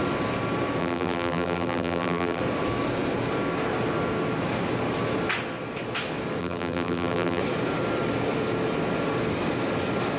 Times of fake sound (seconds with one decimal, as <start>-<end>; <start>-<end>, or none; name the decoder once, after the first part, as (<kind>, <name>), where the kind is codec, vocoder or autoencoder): 0.8-2.4 (vocoder, BigVGAN v2); 6.4-7.4

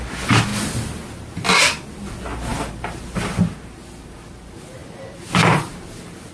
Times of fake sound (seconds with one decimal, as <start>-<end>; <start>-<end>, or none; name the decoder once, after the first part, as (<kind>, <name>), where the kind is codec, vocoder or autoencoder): 2.5-3.4 (vocoder, BigVGAN v2)

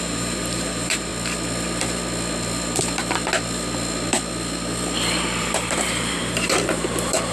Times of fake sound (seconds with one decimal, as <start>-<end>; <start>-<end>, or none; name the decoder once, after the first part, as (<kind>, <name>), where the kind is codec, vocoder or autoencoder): 0.0-1.1 (vocoder, BigVGAN v2); 5.4-7.3

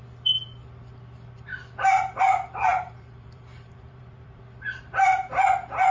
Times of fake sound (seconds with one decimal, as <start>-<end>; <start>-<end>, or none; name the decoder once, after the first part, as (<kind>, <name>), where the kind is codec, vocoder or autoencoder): 2.7-4.4 (vocoder, BigVGAN v2)

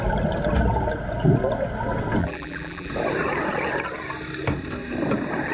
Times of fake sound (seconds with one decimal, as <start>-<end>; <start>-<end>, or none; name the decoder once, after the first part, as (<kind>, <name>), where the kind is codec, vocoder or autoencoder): 2.2-2.9 (vocoder, BigVGAN v2)

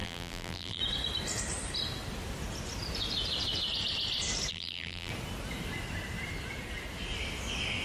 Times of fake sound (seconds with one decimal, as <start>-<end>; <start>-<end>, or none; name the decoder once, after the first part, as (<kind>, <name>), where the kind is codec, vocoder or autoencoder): 0.0-0.8 (vocoder, BigVGAN v2); 4.5-5.1

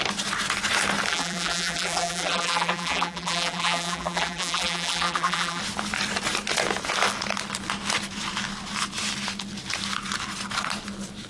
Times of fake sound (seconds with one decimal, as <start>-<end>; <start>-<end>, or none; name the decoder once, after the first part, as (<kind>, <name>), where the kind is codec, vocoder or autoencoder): 1.1-5.6 (vocoder, BigVGAN v2)